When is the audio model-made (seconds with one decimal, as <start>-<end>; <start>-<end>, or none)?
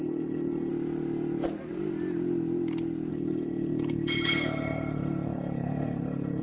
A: 0.0-0.7; 3.1-6.4